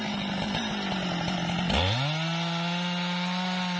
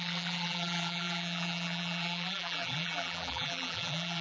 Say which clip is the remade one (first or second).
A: second